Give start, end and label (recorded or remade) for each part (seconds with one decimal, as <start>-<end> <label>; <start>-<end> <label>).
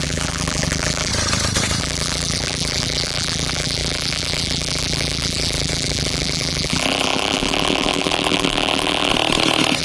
0.0-1.1 remade; 1.1-1.8 recorded; 1.8-9.1 remade; 9.1-9.8 recorded